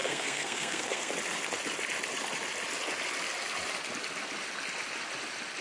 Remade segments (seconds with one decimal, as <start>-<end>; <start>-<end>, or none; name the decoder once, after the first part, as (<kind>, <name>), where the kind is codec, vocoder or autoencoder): 0.0-1.1 (codec, SNAC)